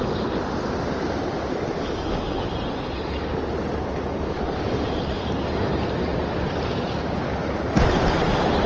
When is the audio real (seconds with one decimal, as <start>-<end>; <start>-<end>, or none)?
0.0-8.7